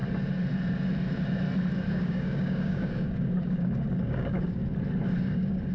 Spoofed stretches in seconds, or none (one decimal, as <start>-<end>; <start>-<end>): 1.9-4.6; 5.2-5.7